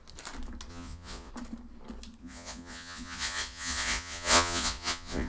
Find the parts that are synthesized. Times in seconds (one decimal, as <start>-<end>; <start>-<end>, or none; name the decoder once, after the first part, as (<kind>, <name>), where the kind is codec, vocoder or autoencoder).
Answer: 0.7-1.3 (vocoder, Vocos); 2.2-5.3